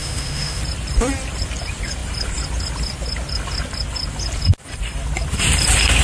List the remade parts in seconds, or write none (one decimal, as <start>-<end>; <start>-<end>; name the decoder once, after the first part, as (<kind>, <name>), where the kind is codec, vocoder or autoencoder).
0.0-0.6 (autoencoder, DAC-VAE)

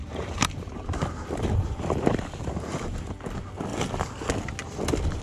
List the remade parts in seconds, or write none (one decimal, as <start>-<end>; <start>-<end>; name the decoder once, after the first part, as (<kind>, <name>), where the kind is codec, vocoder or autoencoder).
0.0-3.1 (vocoder, BigVGAN v2)

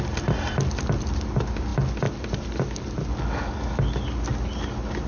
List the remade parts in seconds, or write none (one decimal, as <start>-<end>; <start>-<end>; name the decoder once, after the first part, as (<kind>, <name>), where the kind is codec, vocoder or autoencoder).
none

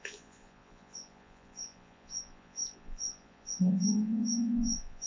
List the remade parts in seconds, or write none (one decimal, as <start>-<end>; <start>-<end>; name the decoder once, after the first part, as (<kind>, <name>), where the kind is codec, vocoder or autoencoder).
0.0-5.1 (vocoder, Vocos)

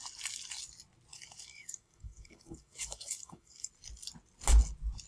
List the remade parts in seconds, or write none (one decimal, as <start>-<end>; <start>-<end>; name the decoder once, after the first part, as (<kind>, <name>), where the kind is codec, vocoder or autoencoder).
1.1-3.7 (codec, DAC)